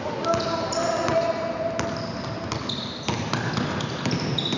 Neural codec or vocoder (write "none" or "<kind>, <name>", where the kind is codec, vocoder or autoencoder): none